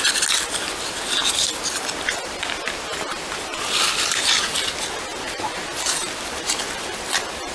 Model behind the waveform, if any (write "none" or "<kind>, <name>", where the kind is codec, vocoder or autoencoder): none